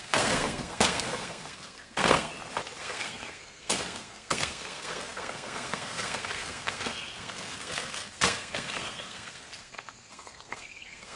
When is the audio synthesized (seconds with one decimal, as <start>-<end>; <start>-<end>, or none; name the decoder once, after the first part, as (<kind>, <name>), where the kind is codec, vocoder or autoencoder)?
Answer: 0.0-2.3 (codec, SNAC); 2.8-11.2